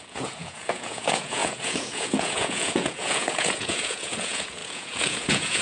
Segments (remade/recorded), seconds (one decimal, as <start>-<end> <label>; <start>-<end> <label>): 0.0-5.6 remade